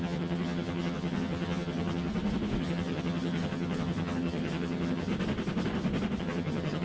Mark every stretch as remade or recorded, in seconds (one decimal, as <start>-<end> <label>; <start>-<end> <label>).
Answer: 0.0-2.1 remade; 2.1-2.6 recorded; 2.6-5.1 remade; 5.1-6.2 recorded; 6.2-6.8 remade